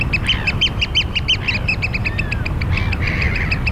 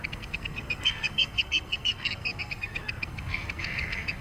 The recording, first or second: first